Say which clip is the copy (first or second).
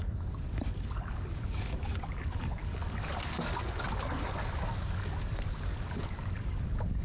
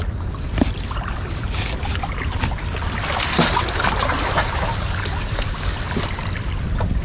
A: first